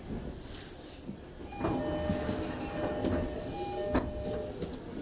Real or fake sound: real